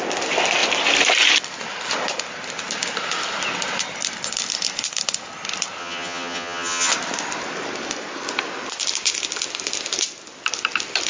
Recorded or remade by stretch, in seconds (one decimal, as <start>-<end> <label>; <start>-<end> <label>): 0.0-5.8 recorded; 5.8-6.9 remade; 6.9-11.1 recorded